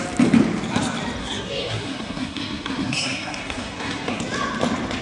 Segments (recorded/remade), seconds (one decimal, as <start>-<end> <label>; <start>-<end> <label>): 0.0-1.2 recorded; 1.2-4.2 remade; 4.2-5.0 recorded